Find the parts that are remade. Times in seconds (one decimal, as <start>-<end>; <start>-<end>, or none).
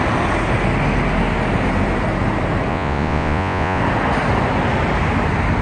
2.7-3.8